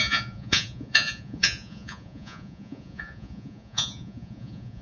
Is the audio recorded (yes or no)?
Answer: no